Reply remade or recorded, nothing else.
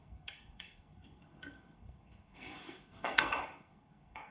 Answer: remade